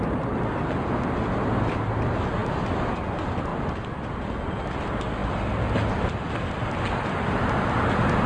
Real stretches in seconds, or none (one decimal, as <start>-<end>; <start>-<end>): 0.0-8.3

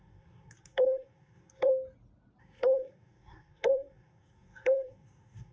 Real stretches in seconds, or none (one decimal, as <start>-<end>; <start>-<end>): 1.7-2.4

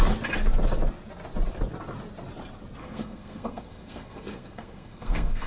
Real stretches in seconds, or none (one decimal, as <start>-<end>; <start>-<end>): 0.0-2.8

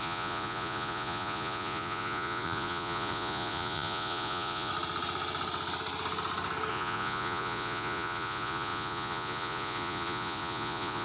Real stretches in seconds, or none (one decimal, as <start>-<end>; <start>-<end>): 4.7-6.7